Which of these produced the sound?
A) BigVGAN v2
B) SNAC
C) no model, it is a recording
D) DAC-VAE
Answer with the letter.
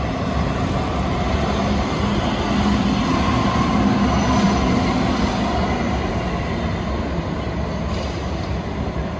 C